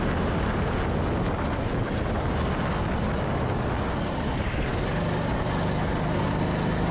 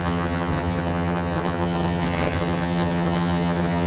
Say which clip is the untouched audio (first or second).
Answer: first